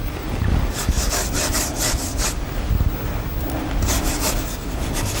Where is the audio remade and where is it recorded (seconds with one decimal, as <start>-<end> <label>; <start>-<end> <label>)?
0.0-1.2 remade; 1.2-4.3 recorded; 4.3-5.2 remade